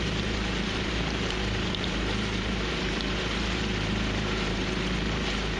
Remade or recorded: remade